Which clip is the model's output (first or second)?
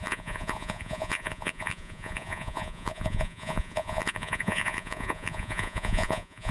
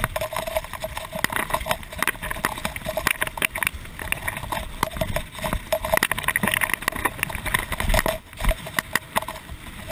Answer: first